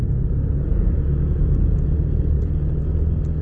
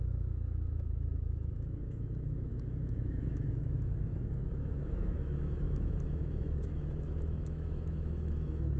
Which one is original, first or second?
first